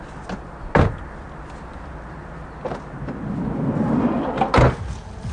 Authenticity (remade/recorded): recorded